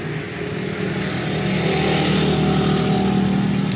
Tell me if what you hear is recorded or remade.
recorded